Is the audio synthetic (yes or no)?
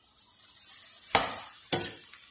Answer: no